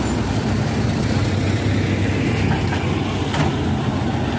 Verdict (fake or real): real